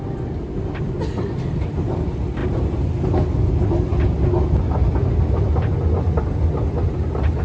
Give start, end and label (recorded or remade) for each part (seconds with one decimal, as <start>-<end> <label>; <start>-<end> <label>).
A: 0.0-7.4 recorded